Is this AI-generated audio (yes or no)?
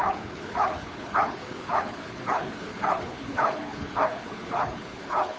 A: yes